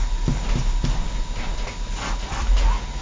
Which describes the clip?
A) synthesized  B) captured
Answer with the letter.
B